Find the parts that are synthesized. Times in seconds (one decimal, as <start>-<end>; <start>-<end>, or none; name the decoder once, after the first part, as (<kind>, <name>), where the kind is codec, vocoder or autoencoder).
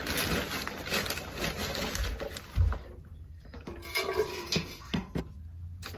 4.3-5.2 (codec, SNAC)